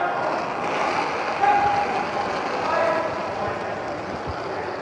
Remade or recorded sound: recorded